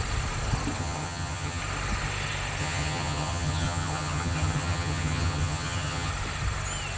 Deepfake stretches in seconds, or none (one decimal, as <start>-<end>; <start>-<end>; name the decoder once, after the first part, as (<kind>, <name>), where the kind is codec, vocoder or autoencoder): 0.8-1.6 (vocoder, HiFi-GAN); 2.6-6.1